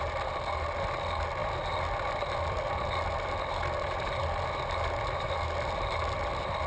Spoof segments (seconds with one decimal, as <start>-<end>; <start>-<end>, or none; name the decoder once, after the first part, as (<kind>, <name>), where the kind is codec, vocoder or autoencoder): none